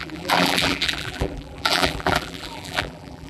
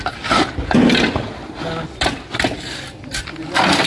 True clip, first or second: second